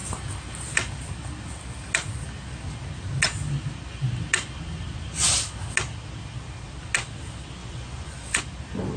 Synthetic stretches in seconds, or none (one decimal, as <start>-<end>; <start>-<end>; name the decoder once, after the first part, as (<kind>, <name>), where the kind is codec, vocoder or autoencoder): 7.6-8.4 (vocoder, Vocos)